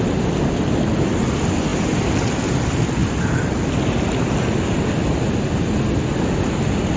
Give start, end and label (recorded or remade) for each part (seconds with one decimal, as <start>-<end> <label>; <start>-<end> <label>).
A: 0.0-7.0 recorded